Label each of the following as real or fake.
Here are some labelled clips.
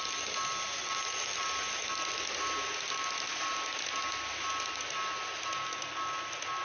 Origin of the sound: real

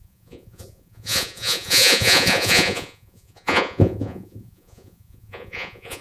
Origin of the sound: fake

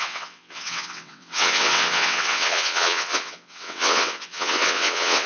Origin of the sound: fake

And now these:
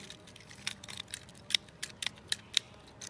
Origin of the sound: real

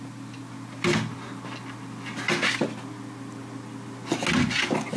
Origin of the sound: real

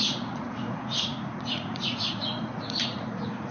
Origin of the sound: fake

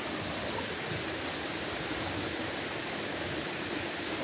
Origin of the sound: real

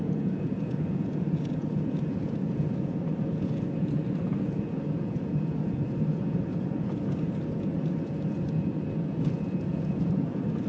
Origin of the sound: fake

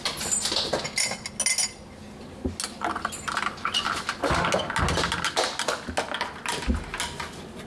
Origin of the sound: real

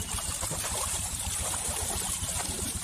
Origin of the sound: fake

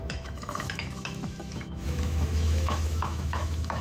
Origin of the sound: fake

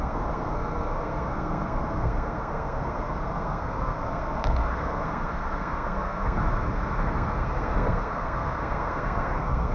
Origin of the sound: fake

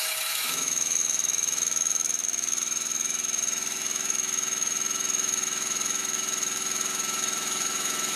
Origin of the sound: fake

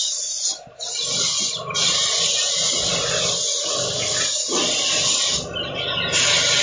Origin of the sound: real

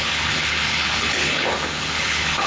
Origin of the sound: fake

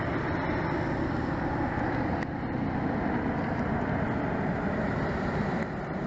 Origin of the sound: real